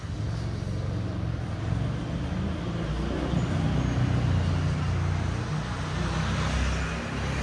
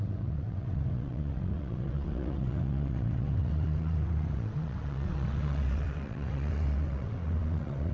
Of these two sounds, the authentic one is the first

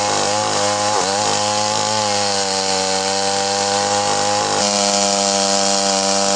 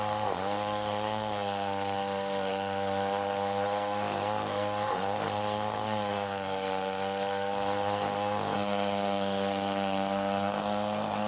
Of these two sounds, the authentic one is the first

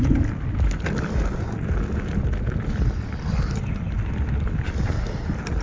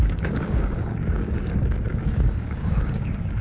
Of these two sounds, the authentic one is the first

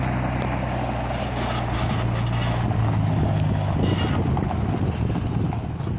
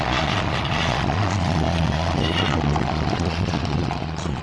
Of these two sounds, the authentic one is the first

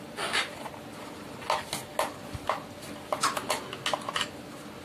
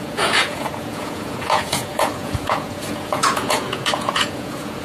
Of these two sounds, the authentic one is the first